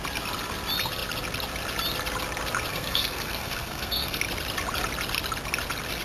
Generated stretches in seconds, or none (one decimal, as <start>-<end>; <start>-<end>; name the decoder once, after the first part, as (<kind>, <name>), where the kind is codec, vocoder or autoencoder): 2.7-4.2 (codec, SNAC)